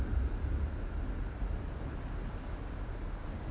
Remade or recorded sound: recorded